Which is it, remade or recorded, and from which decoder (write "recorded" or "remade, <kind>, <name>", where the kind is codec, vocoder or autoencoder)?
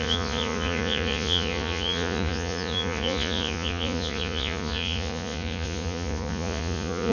remade, vocoder, Vocos